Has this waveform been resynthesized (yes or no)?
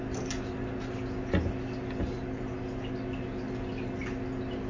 no